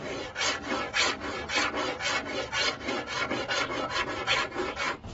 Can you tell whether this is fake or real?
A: real